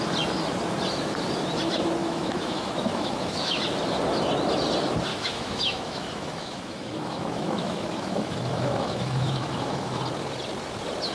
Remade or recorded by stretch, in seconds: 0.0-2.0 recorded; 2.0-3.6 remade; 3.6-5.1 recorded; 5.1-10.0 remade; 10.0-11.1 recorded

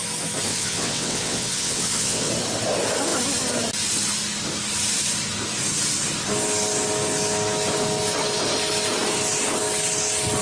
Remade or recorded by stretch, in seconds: 0.0-0.5 recorded; 0.5-2.3 remade; 2.3-10.4 recorded

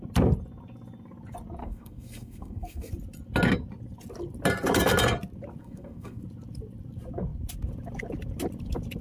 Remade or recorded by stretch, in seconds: 0.0-1.6 recorded; 1.6-2.9 remade; 2.9-5.6 recorded; 5.6-6.2 remade; 6.2-9.0 recorded

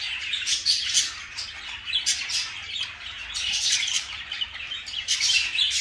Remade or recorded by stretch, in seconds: 0.0-0.8 remade; 0.8-2.1 recorded; 2.1-5.8 remade

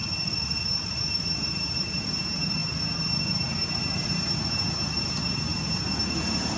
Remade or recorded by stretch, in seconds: 0.0-1.8 recorded; 1.8-6.6 remade